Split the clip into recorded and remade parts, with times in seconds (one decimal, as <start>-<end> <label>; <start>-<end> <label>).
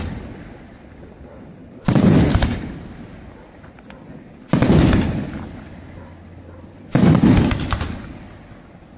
0.0-1.6 recorded; 1.6-3.9 remade; 3.9-9.0 recorded